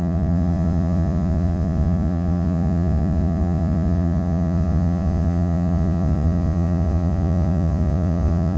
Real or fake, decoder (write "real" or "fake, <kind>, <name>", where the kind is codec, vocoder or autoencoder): fake, vocoder, Vocos